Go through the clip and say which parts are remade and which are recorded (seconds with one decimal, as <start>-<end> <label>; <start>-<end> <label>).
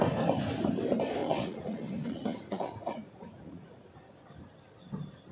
0.0-1.2 recorded; 1.2-4.0 remade; 4.0-5.3 recorded